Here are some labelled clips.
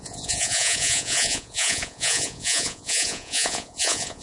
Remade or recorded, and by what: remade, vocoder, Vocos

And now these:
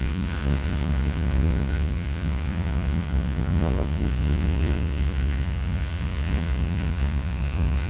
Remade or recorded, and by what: remade, vocoder, Vocos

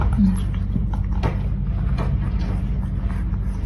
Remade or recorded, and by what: recorded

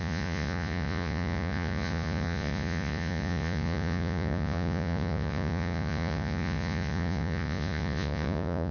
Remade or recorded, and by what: remade, vocoder, Vocos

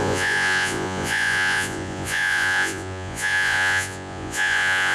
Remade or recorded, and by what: remade, vocoder, Vocos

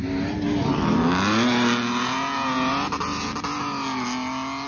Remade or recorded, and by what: recorded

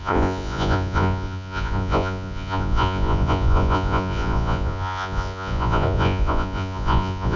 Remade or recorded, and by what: remade, vocoder, Vocos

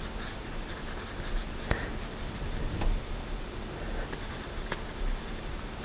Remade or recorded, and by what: recorded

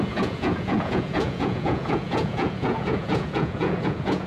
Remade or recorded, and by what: remade, vocoder, Vocos